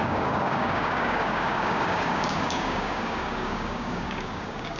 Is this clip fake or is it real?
fake